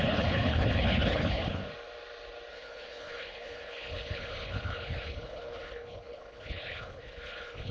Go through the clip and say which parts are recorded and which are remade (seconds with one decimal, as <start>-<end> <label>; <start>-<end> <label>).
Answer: 0.0-1.6 remade; 1.6-2.5 recorded; 2.5-7.7 remade